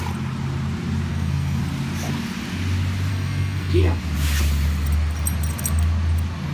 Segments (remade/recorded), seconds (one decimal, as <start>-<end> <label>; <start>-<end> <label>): 0.0-1.1 recorded; 1.1-1.6 remade; 1.6-3.1 recorded; 3.1-4.0 remade; 4.0-6.5 recorded